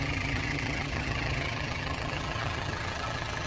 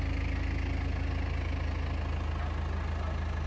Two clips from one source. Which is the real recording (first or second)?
second